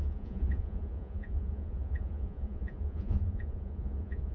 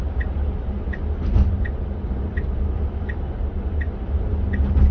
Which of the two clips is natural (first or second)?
second